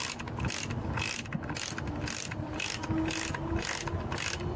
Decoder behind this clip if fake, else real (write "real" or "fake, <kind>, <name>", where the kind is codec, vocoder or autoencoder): real